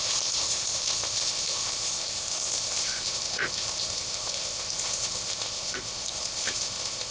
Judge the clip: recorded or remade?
remade